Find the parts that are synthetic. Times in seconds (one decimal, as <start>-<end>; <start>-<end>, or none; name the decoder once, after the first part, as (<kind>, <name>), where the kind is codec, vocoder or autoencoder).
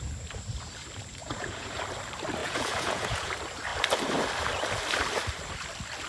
1.2-1.8 (vocoder, Vocos); 2.4-3.3